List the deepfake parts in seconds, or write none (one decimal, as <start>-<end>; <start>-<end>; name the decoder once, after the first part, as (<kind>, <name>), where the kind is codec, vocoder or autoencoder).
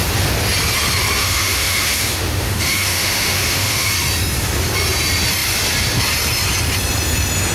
1.2-3.9 (autoencoder, DAC-VAE)